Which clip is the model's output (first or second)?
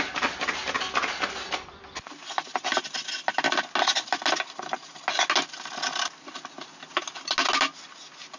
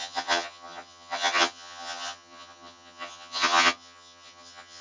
second